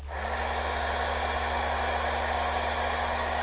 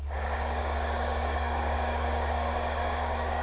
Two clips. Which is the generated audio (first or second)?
second